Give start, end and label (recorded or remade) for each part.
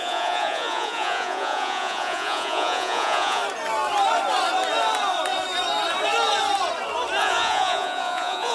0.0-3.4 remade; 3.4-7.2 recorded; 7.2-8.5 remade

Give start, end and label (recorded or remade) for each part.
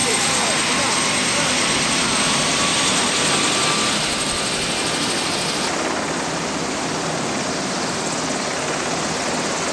0.0-0.6 remade; 0.6-9.7 recorded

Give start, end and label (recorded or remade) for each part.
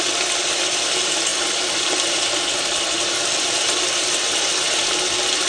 0.0-5.5 recorded